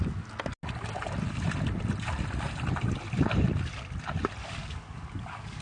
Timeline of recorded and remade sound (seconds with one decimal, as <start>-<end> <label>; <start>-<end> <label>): 0.0-4.4 recorded; 4.4-5.6 remade